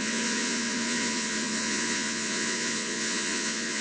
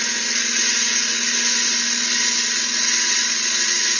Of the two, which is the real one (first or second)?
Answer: second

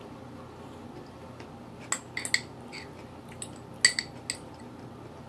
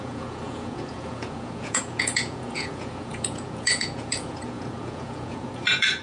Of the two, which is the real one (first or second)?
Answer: first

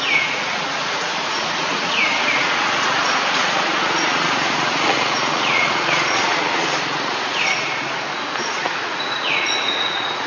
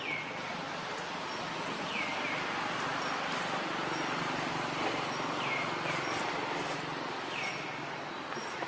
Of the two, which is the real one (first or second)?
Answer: second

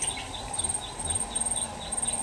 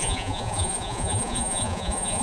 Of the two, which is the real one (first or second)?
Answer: first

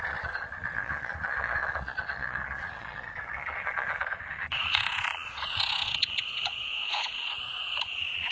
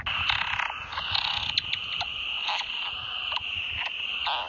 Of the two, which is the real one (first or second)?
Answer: second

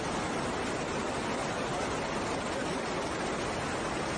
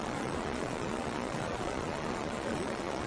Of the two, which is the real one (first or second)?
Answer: first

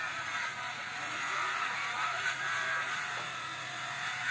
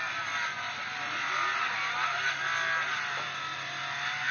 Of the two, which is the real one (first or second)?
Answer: second